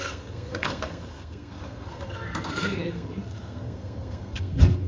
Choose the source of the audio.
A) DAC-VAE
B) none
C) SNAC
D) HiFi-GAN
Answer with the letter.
C